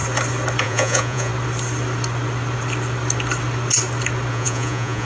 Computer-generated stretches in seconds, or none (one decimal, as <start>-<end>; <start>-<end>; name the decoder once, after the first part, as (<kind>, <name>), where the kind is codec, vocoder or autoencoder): 0.6-1.3 (vocoder, Vocos); 4.3-5.0